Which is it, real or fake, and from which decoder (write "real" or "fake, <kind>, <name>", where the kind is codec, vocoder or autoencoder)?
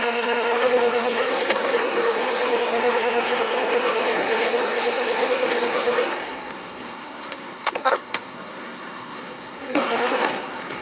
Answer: fake, codec, SNAC